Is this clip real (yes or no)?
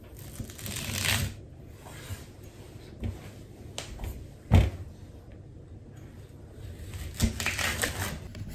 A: yes